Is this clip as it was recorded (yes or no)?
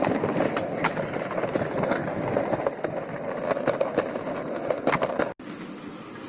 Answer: yes